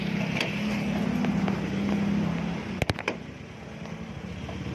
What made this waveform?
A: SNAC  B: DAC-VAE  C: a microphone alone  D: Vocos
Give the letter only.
C